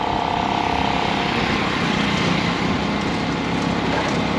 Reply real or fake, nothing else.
real